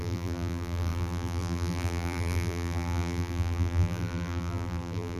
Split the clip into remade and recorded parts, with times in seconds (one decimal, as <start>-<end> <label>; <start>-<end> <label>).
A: 0.0-5.2 remade